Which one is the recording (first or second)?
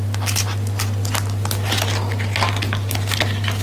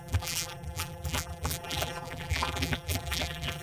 first